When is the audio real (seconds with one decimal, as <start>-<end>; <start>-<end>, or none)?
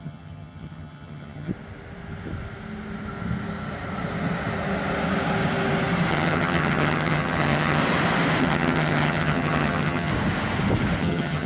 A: 1.5-6.1; 7.8-8.4; 10.1-11.0